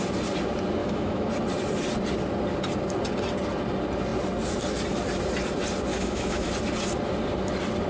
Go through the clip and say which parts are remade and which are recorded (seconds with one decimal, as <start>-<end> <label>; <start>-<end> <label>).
0.0-0.8 recorded; 0.8-1.3 remade; 1.3-5.9 recorded; 5.9-6.5 remade; 6.5-7.9 recorded